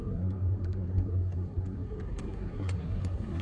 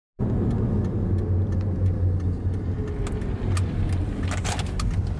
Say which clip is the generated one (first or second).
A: first